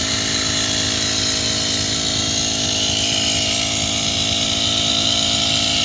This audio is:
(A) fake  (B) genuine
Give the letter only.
B